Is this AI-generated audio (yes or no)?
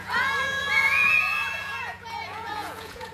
yes